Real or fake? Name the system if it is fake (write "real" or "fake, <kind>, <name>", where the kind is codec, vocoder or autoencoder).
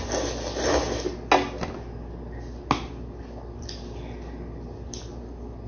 real